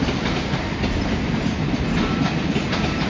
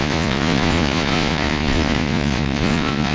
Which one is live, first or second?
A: first